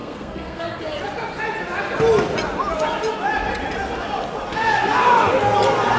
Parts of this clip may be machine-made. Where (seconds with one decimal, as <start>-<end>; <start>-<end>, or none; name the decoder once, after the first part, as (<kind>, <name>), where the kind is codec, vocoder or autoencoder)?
0.0-0.8 (codec, SNAC)

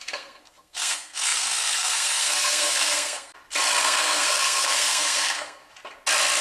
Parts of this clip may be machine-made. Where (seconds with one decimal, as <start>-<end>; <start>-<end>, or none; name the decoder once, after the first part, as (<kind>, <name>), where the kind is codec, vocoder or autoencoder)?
0.0-3.3 (codec, SNAC); 3.8-5.6

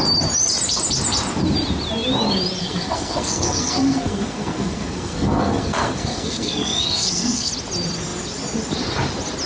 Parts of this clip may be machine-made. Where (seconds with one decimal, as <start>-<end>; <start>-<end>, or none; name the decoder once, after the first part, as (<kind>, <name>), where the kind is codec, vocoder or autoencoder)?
2.6-7.5 (codec, SNAC)

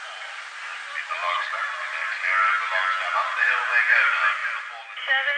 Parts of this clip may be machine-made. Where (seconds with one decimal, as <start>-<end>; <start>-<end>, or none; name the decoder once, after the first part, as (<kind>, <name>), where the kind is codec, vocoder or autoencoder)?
none

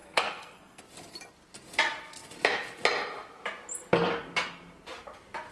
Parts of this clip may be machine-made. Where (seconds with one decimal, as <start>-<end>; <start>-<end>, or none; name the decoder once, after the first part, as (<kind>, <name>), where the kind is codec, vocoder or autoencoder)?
0.0-0.8 (codec, SNAC)